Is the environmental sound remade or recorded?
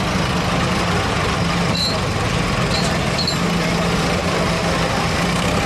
recorded